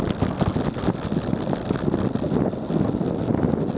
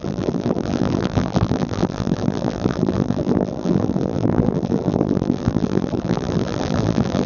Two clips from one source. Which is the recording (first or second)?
first